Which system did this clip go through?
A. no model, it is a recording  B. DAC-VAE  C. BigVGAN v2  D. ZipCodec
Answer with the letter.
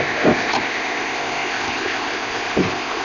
D